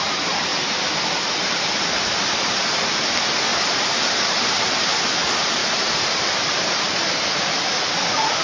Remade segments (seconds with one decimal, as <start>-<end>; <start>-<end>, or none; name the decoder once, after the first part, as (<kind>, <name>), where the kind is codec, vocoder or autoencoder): 3.5-5.0 (vocoder, BigVGAN v2); 5.6-6.9